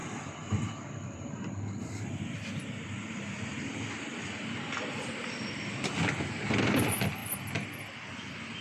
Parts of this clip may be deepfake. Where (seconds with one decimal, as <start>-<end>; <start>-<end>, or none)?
0.0-3.9